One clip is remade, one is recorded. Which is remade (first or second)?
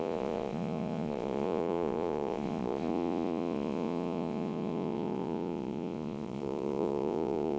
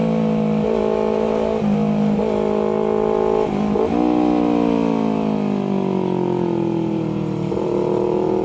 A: first